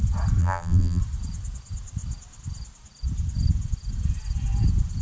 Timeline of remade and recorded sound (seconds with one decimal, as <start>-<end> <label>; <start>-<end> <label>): 0.0-0.4 recorded; 0.4-1.0 remade; 1.0-5.0 recorded